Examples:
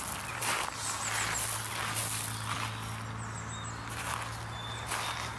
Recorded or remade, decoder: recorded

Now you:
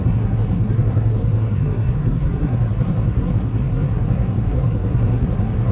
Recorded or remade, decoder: remade, codec, SNAC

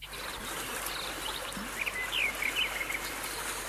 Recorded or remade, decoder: recorded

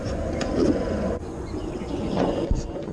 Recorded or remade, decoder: remade, vocoder, Vocos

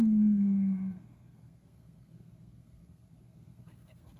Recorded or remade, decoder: remade, codec, SNAC